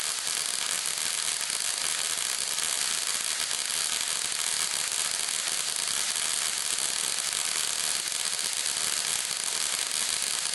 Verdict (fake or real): real